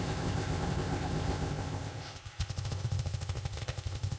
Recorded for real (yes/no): no